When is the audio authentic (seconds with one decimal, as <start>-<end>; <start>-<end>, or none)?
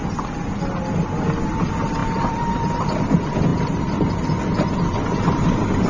0.0-2.0; 3.0-3.5; 4.1-5.9